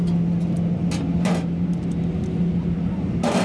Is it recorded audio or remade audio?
recorded